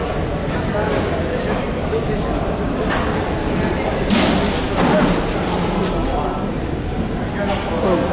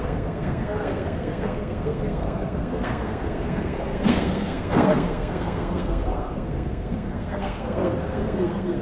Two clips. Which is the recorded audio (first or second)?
first